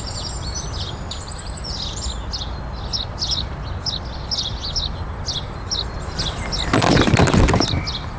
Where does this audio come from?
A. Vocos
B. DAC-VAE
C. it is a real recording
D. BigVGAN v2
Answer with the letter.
C